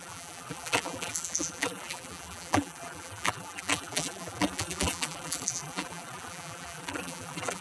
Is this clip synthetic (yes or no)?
yes